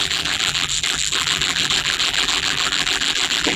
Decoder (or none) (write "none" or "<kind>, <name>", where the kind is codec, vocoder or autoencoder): vocoder, BigVGAN v2